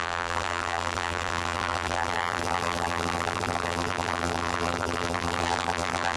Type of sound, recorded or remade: remade